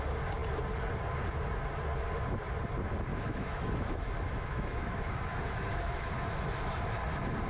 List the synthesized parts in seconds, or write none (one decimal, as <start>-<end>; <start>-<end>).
3.1-6.1